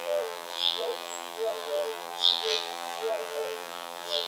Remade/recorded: remade